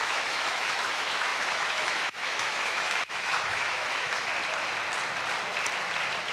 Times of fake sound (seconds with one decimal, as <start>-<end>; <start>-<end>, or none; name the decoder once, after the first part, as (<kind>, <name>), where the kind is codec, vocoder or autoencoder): 0.0-4.3 (autoencoder, DAC-VAE)